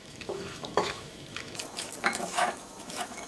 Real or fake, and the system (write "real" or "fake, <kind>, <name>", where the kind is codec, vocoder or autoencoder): fake, autoencoder, DAC-VAE